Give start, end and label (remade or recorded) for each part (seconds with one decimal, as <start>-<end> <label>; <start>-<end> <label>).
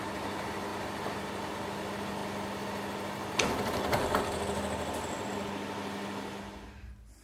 0.0-7.2 recorded